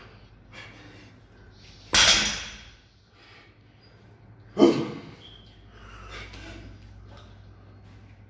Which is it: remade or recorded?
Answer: recorded